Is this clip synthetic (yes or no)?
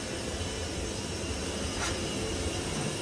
no